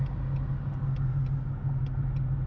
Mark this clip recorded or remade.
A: recorded